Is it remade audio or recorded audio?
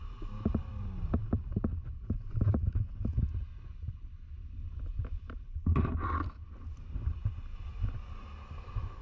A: recorded